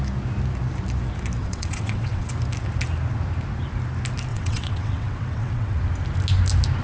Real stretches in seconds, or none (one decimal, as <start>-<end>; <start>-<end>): 0.0-1.4; 2.3-4.3; 5.8-6.8